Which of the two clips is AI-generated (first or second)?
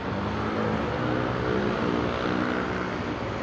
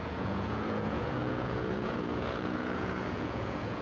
second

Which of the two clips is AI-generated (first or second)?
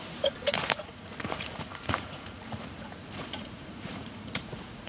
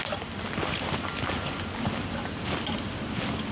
first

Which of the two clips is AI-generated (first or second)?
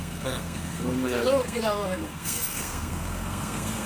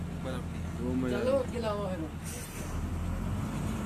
first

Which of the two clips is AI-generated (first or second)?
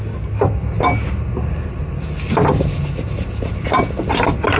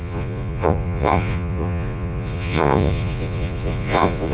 second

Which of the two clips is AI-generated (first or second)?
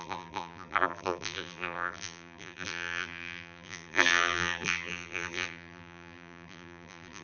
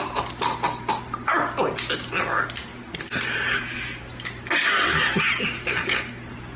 first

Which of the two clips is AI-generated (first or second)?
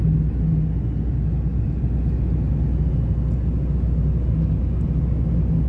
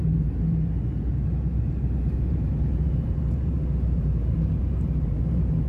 second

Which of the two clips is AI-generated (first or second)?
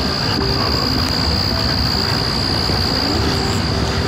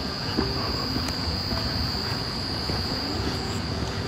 second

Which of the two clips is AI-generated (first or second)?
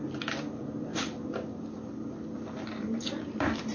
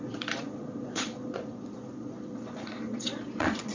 second